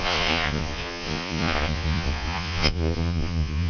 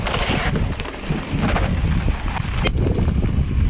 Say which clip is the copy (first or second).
first